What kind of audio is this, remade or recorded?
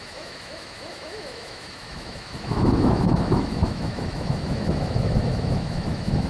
remade